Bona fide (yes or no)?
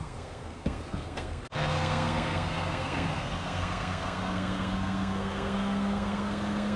no